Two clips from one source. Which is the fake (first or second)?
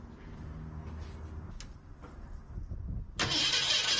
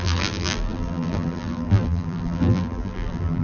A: second